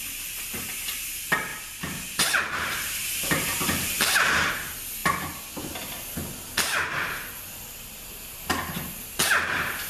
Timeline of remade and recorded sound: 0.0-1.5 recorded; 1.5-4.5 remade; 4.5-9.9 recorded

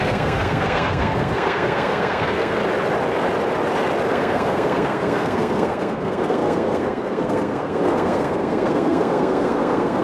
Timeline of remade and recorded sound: 0.0-2.6 remade; 2.6-4.1 recorded; 4.1-10.0 remade

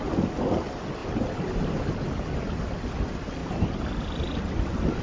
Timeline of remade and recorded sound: 0.0-1.0 recorded; 1.0-1.7 remade; 1.7-3.4 recorded; 3.4-4.4 remade; 4.4-5.0 recorded

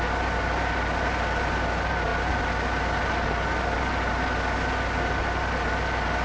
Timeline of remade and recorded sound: 0.0-6.2 recorded